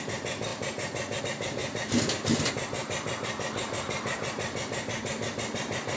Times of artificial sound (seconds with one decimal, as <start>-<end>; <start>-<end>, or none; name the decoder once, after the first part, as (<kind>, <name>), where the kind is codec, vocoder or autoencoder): none